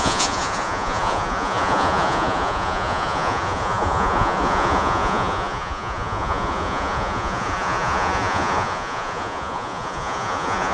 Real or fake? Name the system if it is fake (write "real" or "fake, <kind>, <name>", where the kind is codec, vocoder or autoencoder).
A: fake, vocoder, Vocos